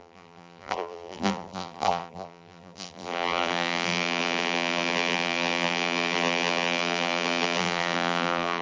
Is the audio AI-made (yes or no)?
yes